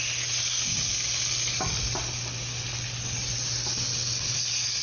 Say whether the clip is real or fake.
real